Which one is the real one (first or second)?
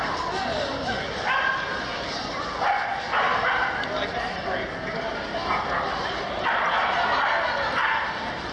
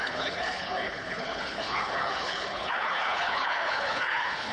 first